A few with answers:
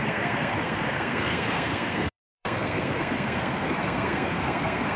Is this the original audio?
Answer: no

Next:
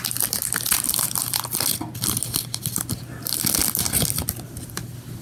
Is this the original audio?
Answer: yes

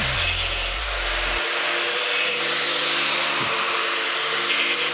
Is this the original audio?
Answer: yes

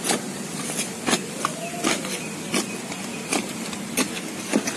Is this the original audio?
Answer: yes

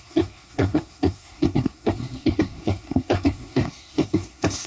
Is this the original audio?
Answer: no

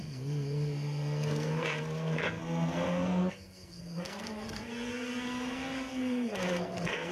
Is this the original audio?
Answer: no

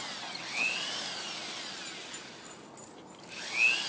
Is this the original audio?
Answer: yes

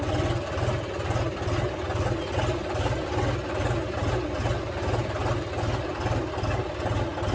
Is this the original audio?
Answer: yes